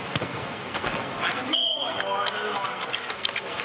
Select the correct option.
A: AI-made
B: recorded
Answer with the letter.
A